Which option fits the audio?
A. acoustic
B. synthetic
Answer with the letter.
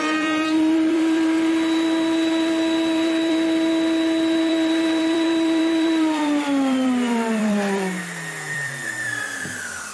B